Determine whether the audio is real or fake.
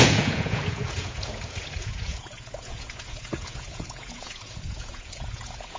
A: fake